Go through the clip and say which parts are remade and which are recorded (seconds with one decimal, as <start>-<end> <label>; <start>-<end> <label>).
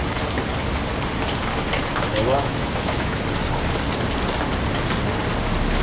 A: 0.0-2.1 recorded; 2.1-3.2 remade; 3.2-5.8 recorded